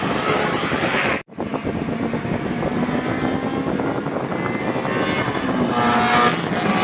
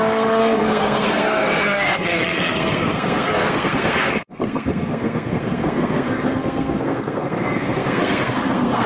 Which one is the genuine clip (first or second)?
first